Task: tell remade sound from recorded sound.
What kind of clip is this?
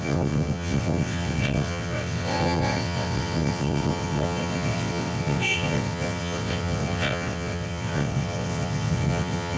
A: remade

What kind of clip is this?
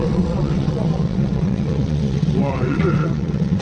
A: remade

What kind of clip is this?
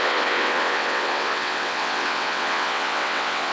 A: remade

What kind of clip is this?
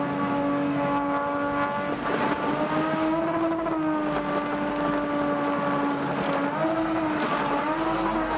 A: recorded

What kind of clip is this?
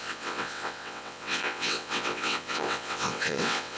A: remade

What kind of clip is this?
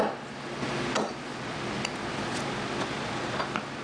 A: recorded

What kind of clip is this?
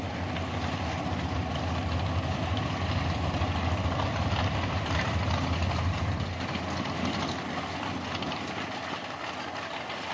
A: recorded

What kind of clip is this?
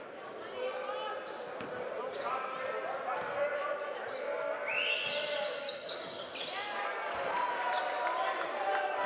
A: recorded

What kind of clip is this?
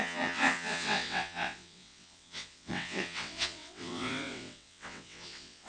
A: remade